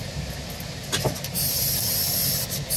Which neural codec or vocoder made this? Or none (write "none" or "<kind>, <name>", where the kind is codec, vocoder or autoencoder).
none